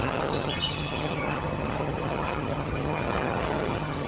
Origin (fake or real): fake